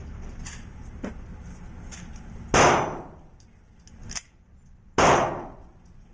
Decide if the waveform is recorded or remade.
recorded